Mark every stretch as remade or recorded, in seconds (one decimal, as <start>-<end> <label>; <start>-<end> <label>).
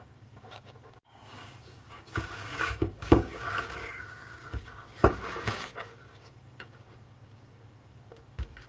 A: 0.0-8.7 remade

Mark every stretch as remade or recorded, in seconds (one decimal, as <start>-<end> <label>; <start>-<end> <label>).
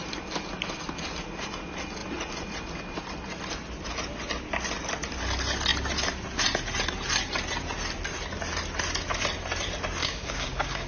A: 0.0-10.0 recorded; 10.0-10.9 remade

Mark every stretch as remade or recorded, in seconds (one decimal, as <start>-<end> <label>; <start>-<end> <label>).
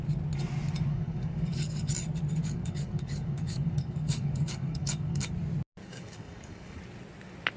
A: 0.0-0.9 recorded; 0.9-1.9 remade; 1.9-2.4 recorded; 2.4-5.3 remade; 5.3-5.8 recorded; 5.8-6.8 remade; 6.8-7.6 recorded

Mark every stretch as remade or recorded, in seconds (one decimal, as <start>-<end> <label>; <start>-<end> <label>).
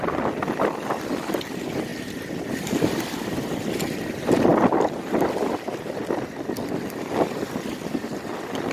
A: 0.0-8.7 recorded